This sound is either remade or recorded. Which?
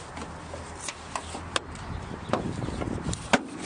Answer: recorded